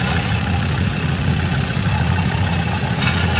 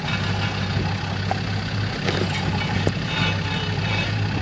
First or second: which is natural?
second